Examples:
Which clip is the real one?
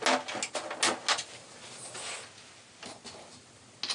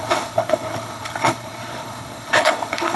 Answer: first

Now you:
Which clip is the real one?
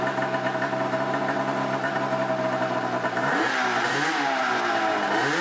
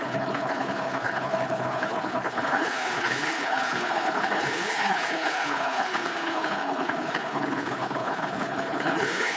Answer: first